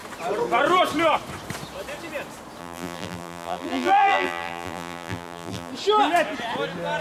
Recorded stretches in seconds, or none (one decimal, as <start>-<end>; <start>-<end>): 0.0-2.6; 5.7-7.0